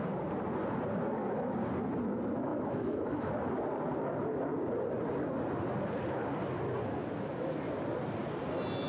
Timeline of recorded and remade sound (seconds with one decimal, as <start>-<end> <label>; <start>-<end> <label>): 0.0-2.5 recorded; 2.5-3.3 remade; 3.3-8.9 recorded